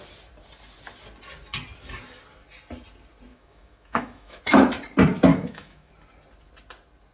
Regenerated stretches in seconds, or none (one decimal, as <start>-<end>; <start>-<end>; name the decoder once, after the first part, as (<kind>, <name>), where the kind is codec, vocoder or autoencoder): 3.3-4.4 (autoencoder, DAC-VAE); 5.3-5.9